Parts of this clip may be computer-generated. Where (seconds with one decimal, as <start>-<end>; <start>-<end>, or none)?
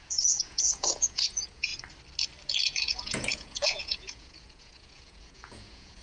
0.0-1.7; 2.6-6.0